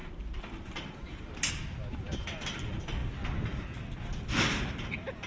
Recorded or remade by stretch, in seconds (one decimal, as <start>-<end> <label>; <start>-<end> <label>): 0.0-5.3 recorded